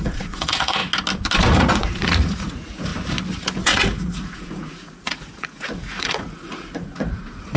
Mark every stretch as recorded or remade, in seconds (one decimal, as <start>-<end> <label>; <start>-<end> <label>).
0.0-0.8 remade; 0.8-1.5 recorded; 1.5-2.9 remade; 2.9-3.4 recorded; 3.4-7.6 remade